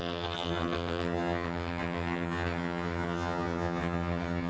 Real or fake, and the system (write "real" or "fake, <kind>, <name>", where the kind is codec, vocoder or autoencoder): fake, vocoder, HiFi-GAN